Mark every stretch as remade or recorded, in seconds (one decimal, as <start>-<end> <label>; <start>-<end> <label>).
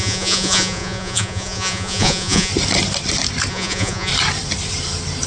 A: 0.0-2.5 remade; 2.5-3.5 recorded; 3.5-4.1 remade; 4.1-5.3 recorded